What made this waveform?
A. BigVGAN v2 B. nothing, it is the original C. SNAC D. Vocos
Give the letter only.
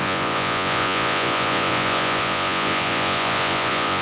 D